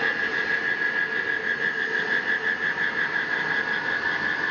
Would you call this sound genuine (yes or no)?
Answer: yes